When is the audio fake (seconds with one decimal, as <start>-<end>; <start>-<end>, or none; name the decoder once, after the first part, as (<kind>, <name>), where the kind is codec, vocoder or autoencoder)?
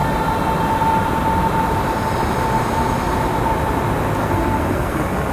4.2-5.3 (codec, SNAC)